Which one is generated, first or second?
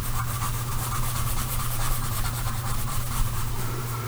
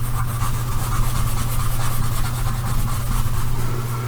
first